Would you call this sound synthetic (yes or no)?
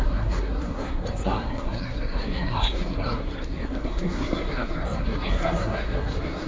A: yes